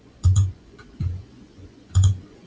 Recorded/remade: remade